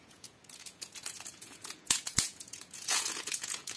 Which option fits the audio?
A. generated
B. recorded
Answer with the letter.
A